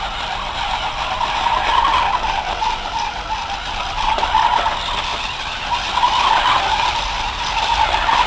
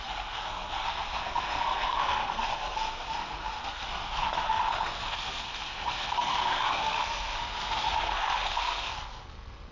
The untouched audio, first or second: first